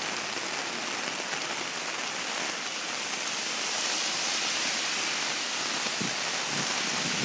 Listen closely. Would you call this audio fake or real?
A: real